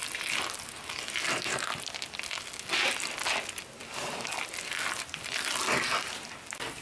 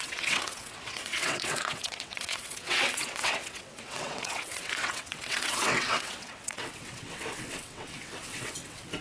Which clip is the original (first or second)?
first